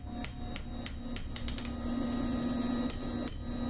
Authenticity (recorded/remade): recorded